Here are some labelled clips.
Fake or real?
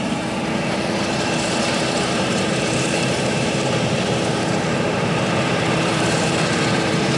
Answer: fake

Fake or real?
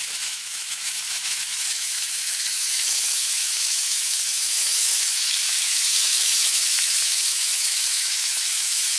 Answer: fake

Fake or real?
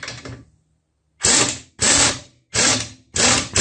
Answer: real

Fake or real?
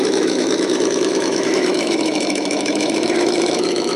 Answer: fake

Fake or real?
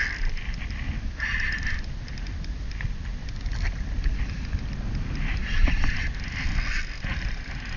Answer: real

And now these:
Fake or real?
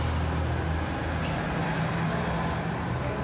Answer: real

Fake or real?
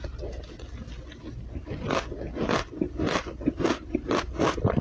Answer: real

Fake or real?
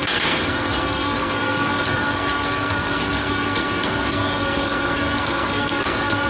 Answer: fake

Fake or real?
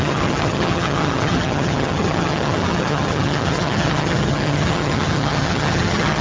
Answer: fake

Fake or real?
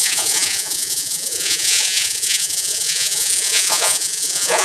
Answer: fake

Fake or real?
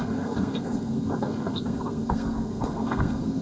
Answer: fake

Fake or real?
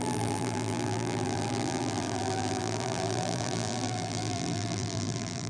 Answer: fake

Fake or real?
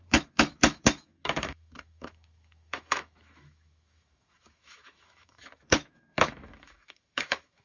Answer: fake